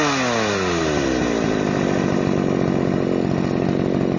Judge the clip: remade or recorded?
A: recorded